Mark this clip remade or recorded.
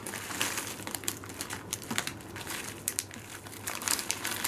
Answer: remade